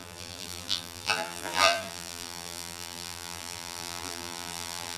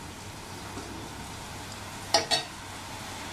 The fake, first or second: first